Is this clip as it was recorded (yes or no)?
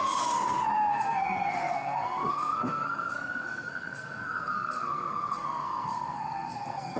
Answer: no